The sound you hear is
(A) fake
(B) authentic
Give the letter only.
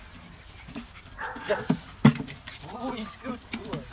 B